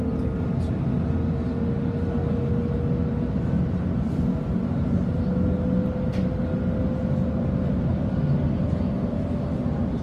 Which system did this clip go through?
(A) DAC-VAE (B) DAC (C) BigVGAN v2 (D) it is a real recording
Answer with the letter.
D